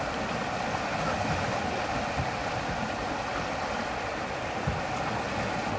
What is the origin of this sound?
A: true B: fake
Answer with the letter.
A